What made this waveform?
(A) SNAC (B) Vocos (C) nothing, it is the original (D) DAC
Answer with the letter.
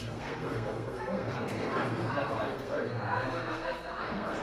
A